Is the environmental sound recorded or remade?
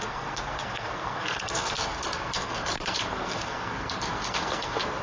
remade